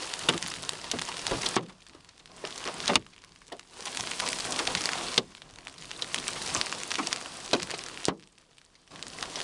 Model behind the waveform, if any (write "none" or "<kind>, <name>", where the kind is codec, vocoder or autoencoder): none